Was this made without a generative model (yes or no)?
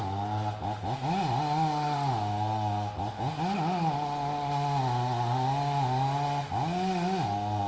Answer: yes